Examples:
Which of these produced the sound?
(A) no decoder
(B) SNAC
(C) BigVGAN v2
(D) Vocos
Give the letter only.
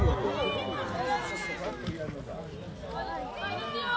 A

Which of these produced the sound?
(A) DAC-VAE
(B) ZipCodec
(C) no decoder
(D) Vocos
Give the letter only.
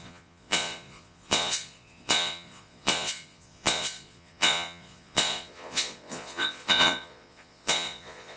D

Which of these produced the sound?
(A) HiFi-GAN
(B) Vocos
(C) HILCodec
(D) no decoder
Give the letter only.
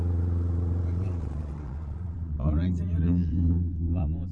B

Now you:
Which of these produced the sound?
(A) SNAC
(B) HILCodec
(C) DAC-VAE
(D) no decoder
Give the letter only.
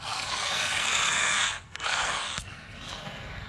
A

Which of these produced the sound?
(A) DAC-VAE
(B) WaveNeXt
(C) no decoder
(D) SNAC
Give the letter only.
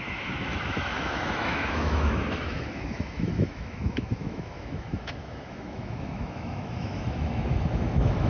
A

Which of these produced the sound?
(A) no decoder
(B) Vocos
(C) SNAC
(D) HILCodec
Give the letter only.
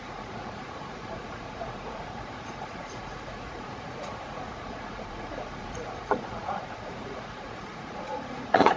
B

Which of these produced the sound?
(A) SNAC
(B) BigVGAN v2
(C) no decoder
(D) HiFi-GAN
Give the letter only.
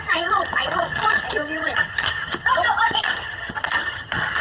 D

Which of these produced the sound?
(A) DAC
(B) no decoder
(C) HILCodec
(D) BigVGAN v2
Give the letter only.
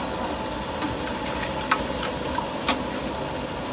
B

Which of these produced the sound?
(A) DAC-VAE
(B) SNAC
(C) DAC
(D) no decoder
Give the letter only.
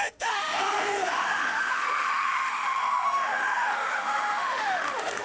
A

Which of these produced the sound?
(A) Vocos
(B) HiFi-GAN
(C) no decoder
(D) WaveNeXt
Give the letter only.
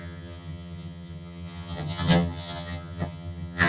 B